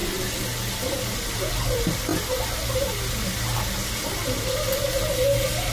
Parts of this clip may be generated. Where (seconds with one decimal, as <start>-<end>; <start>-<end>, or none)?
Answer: none